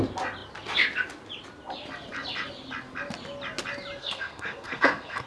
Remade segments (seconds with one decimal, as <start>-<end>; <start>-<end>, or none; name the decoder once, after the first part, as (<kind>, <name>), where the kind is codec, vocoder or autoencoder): 4.0-5.3 (codec, SNAC)